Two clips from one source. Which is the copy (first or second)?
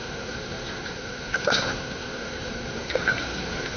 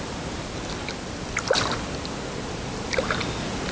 first